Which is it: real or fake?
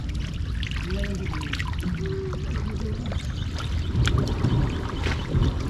real